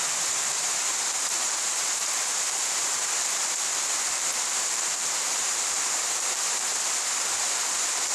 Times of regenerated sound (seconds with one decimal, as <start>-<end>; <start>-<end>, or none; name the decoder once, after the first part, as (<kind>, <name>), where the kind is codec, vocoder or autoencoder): 0.0-6.7 (vocoder, BigVGAN v2); 7.4-8.1